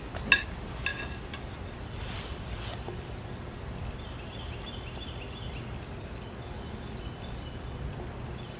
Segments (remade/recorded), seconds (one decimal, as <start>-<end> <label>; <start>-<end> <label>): 0.0-8.6 recorded